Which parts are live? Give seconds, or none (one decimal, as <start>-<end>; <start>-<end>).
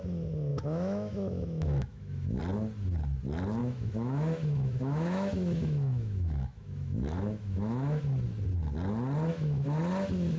0.0-0.5; 2.4-3.6; 8.0-9.3; 9.8-10.4